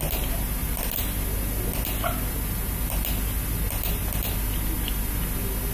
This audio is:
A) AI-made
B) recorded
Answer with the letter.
B